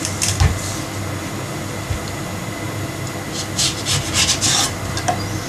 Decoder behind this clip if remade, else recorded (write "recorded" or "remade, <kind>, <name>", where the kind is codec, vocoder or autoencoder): recorded